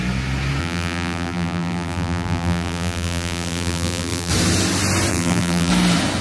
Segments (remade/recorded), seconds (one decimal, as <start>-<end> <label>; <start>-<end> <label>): 0.0-0.6 recorded; 0.6-4.3 remade; 4.3-5.1 recorded; 5.1-5.7 remade; 5.7-6.2 recorded